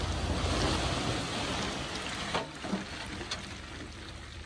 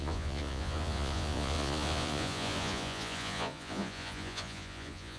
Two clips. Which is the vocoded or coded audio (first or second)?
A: second